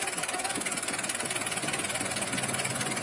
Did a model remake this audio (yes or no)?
yes